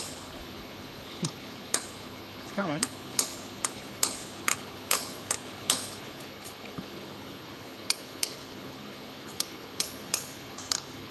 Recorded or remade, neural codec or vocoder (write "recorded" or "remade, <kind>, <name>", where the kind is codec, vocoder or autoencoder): remade, codec, HILCodec